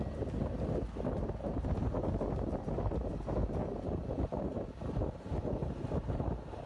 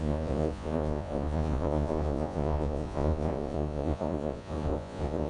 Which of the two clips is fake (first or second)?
second